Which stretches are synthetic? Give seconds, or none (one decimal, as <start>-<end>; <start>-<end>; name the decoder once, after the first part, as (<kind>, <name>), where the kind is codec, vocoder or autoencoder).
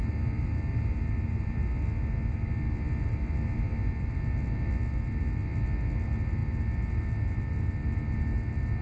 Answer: none